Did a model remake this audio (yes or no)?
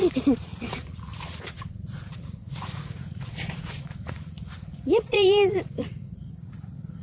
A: yes